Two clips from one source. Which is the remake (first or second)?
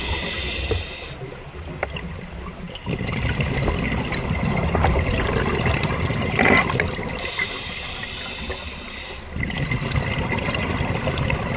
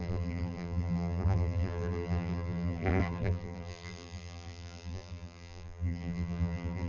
second